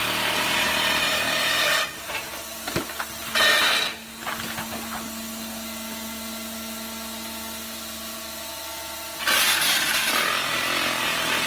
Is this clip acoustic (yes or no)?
yes